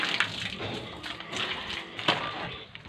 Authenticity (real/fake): real